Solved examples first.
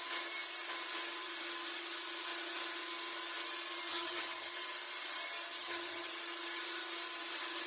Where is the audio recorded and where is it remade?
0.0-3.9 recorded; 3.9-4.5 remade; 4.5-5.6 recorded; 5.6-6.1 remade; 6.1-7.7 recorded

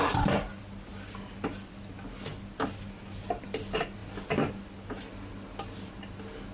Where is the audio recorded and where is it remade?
0.0-6.5 recorded